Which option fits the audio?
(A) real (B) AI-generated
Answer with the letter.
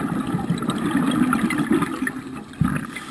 A